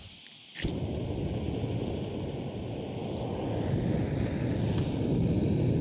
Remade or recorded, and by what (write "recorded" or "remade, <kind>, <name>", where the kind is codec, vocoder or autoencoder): recorded